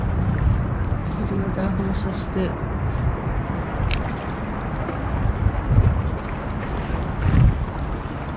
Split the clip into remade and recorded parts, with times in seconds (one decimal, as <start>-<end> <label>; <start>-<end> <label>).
0.0-1.0 recorded; 1.0-1.8 remade; 1.8-2.5 recorded; 2.5-3.8 remade; 3.8-8.4 recorded